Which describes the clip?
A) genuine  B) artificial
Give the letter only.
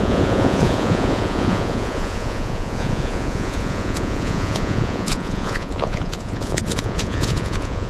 B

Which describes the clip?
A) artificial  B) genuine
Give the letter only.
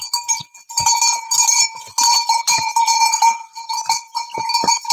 B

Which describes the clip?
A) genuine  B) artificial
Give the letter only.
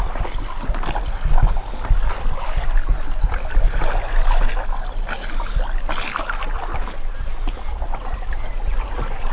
A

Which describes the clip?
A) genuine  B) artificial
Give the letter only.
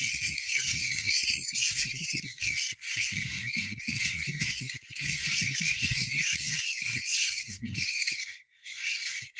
B